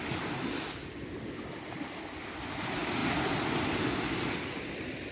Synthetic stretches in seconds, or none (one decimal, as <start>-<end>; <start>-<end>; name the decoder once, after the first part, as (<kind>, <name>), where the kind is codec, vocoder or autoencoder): none

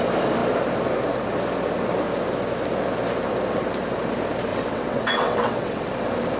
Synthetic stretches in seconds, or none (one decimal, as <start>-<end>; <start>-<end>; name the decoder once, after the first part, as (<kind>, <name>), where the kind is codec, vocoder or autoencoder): 4.5-5.9 (vocoder, WaveNeXt)

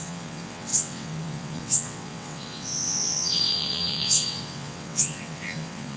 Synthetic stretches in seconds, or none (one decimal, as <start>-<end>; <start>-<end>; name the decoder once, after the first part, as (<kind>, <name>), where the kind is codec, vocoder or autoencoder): 0.0-6.0 (vocoder, WaveNeXt)

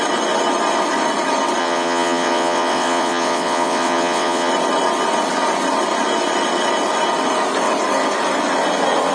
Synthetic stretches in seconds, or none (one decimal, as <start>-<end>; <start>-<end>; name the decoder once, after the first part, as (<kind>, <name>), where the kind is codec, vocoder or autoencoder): 1.6-4.5 (vocoder, WaveNeXt)

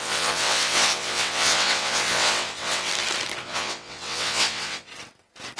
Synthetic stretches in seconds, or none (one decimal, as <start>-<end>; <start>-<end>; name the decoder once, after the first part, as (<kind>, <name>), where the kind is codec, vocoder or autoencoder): 0.0-2.9 (vocoder, WaveNeXt); 3.4-4.9

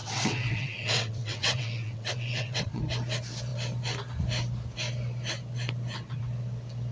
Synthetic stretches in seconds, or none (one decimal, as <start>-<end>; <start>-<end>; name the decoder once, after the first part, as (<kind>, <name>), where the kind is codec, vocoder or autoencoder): 0.0-2.8 (vocoder, WaveNeXt)